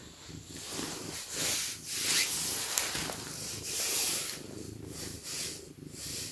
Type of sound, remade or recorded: recorded